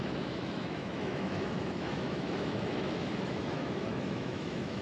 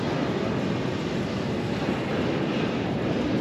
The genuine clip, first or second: second